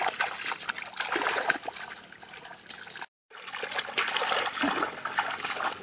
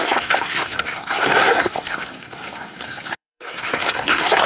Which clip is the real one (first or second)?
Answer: first